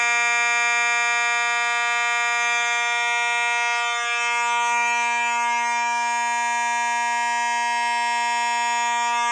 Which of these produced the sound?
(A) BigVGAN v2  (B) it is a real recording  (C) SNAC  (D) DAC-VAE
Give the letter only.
B